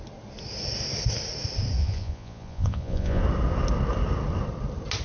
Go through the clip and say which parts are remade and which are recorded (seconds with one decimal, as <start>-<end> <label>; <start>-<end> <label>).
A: 0.0-1.8 recorded; 1.8-3.2 remade; 3.2-5.0 recorded